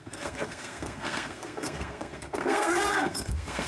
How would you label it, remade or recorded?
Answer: remade